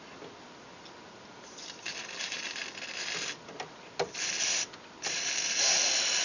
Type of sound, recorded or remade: recorded